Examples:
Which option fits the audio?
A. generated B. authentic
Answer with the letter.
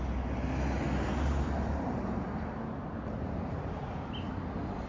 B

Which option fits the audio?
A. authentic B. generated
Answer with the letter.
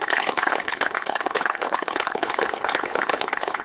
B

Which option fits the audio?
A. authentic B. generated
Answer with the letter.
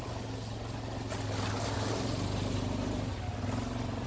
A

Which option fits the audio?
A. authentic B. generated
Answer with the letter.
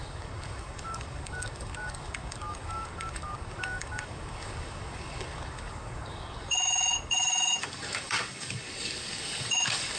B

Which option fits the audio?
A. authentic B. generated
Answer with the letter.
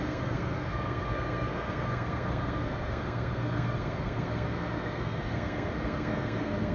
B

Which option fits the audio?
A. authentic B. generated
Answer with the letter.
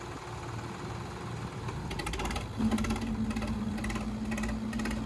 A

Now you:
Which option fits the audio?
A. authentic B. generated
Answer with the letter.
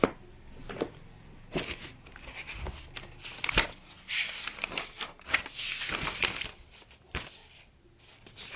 A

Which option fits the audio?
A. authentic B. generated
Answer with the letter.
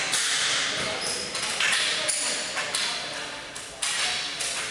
A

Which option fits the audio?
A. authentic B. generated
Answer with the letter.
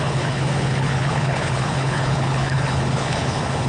B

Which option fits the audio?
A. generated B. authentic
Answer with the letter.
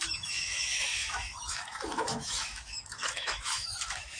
A